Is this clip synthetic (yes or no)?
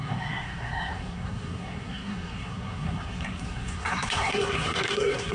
yes